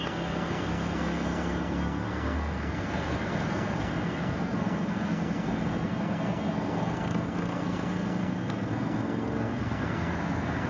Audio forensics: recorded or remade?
remade